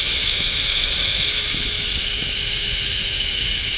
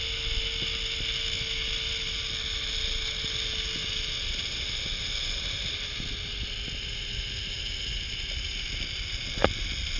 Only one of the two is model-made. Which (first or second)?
first